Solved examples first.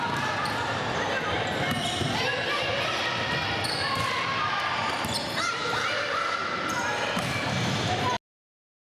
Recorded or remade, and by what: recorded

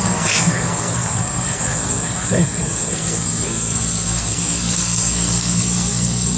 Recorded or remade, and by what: remade, codec, SNAC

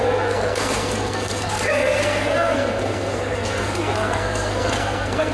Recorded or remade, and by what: remade, codec, SNAC